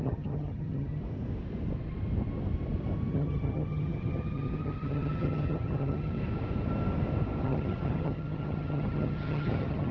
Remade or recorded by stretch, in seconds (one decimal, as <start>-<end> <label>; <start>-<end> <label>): 0.0-1.0 remade; 1.0-3.1 recorded; 3.1-6.2 remade; 6.2-7.4 recorded; 7.4-9.9 remade